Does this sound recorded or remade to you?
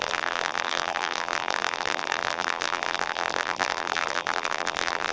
remade